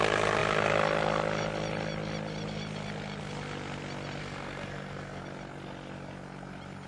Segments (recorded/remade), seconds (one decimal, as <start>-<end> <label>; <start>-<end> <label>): 0.0-4.2 recorded; 4.2-5.2 remade; 5.2-6.9 recorded